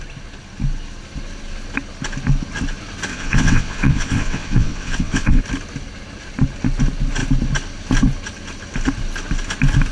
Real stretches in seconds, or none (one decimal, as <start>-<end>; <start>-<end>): 0.0-3.1; 5.4-9.9